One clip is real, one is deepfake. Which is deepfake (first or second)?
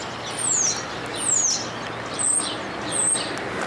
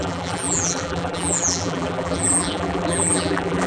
second